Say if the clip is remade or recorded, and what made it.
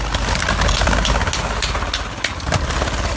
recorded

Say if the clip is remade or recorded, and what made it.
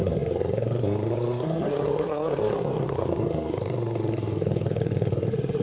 remade, codec, SNAC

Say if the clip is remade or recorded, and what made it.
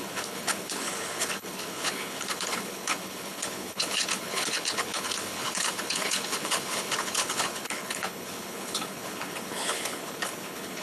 remade, codec, HILCodec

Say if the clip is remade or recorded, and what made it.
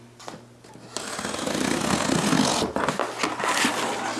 recorded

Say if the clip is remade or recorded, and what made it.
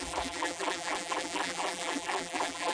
remade, vocoder, BigVGAN v2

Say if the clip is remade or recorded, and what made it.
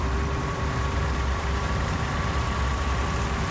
remade, vocoder, BigVGAN v2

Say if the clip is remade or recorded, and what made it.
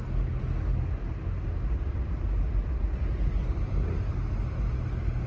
recorded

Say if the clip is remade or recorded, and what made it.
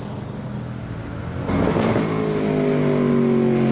recorded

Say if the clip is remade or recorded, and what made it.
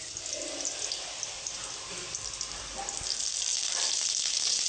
recorded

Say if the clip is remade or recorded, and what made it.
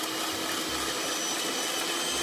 recorded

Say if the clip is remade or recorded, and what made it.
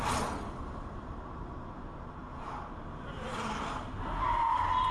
recorded